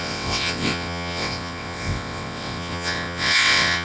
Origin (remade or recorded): remade